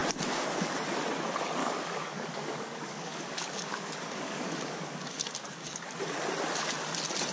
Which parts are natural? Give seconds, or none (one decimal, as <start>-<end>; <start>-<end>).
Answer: 0.0-1.6; 6.0-7.3